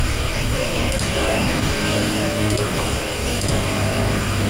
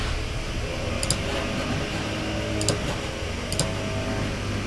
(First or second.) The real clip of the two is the second